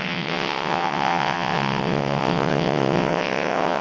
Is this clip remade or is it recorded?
remade